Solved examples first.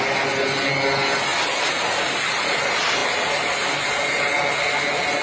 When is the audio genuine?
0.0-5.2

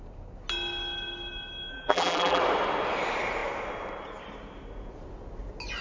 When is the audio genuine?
0.0-1.7; 2.4-5.8